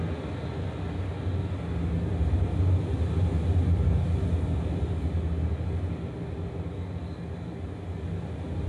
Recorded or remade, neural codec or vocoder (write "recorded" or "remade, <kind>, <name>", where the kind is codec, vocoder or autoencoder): recorded